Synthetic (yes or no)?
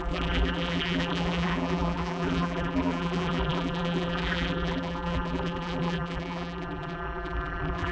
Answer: yes